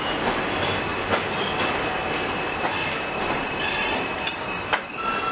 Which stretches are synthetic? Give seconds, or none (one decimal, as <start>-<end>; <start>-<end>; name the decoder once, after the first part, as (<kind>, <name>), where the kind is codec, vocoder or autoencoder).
2.0-5.3 (vocoder, BigVGAN v2)